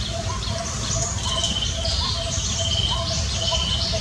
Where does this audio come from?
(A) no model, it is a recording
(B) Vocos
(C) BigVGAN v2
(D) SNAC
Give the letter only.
A